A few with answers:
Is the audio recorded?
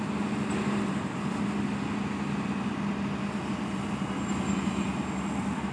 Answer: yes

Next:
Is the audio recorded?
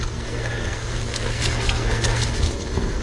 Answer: no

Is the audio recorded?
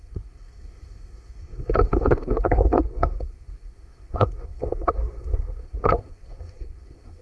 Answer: no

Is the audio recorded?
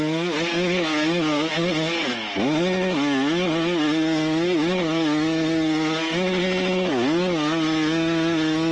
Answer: yes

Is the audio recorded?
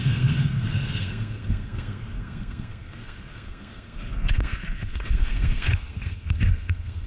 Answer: no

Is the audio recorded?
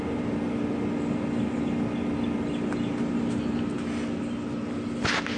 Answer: yes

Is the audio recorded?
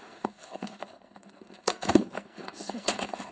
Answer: no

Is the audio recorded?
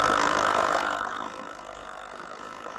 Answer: no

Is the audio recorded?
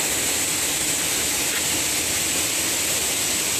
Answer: yes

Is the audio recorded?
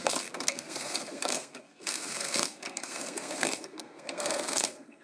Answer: no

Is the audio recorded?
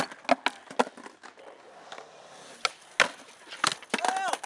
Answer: yes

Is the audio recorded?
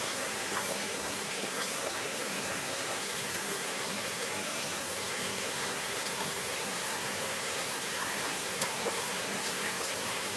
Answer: no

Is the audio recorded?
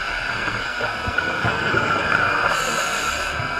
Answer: no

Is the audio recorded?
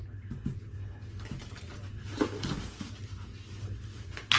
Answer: yes